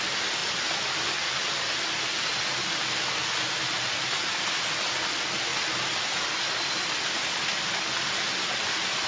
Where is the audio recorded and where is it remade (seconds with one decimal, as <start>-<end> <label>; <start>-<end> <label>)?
0.0-9.1 recorded